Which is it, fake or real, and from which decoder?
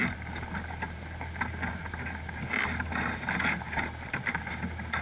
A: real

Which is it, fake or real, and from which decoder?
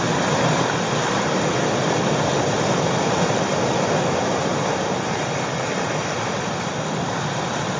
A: fake, vocoder, BigVGAN v2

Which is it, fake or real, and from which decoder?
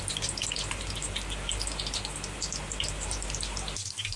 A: real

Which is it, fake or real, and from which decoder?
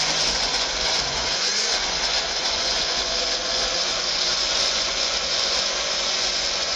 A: fake, vocoder, Vocos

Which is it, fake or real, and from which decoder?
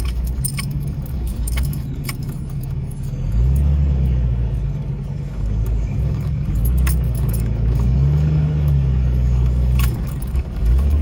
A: fake, codec, DAC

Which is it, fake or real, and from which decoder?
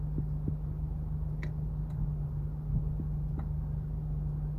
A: real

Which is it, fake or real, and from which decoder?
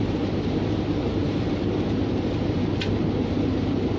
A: fake, vocoder, BigVGAN v2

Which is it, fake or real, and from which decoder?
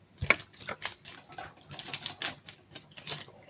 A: real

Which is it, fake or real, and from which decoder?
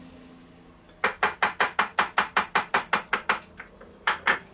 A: real